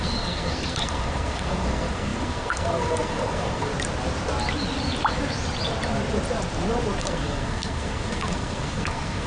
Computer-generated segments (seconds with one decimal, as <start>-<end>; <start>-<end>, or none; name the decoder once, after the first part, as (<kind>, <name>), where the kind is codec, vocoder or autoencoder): 0.0-3.7 (codec, SNAC); 7.0-9.3